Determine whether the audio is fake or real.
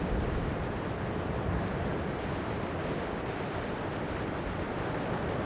real